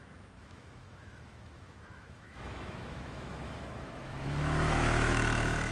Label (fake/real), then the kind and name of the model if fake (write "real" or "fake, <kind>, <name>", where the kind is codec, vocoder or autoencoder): fake, autoencoder, DAC-VAE